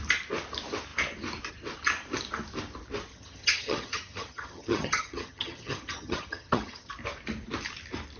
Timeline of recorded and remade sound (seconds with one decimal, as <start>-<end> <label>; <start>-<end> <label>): 0.0-3.1 recorded; 3.1-6.9 remade; 6.9-8.2 recorded